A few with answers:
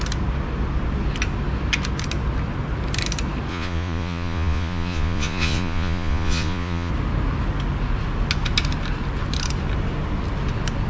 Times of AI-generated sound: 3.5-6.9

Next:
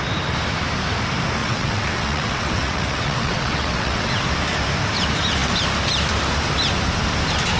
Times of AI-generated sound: 1.4-4.3

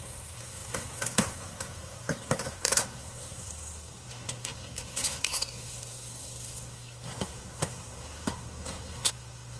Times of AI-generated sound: 0.0-9.6